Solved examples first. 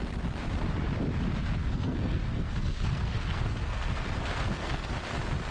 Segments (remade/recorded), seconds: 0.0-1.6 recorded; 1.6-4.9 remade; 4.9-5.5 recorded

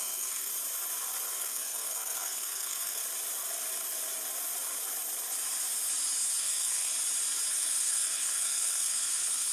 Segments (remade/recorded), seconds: 0.0-0.5 remade; 0.5-1.4 recorded; 1.4-3.0 remade; 3.0-6.4 recorded; 6.4-6.9 remade; 6.9-7.5 recorded; 7.5-9.5 remade

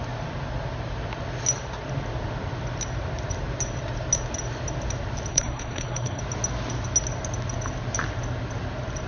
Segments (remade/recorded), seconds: 0.0-5.3 recorded; 5.3-6.2 remade; 6.2-9.1 recorded